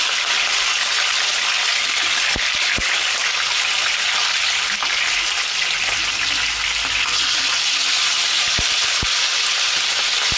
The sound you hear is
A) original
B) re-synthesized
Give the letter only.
A